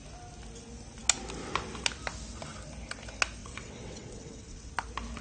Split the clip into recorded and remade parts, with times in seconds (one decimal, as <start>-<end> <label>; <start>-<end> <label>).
0.0-3.4 recorded; 3.4-4.7 remade; 4.7-5.2 recorded

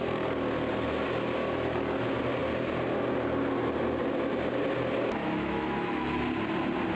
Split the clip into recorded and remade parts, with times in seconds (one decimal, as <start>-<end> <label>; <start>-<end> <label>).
0.0-5.2 recorded; 5.2-6.2 remade; 6.2-7.0 recorded

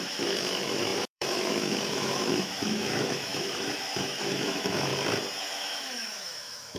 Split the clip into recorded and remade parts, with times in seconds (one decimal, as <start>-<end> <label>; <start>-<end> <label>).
0.0-4.9 remade; 4.9-5.4 recorded; 5.4-6.8 remade

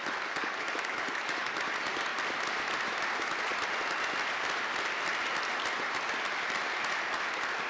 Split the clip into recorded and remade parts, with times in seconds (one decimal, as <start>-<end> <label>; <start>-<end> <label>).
0.0-0.4 recorded; 0.4-1.5 remade; 1.5-7.7 recorded

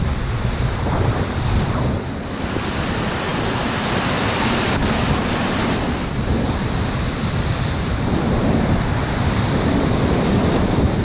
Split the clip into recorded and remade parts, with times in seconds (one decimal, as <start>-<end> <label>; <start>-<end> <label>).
0.0-11.0 remade

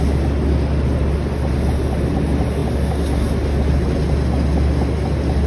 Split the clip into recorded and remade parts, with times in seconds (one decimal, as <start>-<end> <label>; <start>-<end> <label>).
0.0-5.5 recorded